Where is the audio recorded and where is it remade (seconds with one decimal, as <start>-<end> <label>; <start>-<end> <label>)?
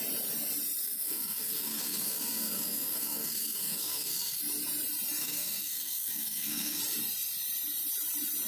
0.0-0.8 recorded; 0.8-4.4 remade; 4.4-5.2 recorded; 5.2-6.8 remade; 6.8-8.5 recorded